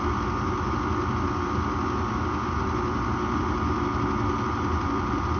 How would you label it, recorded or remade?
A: recorded